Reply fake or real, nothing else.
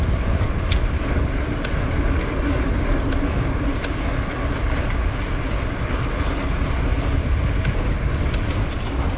real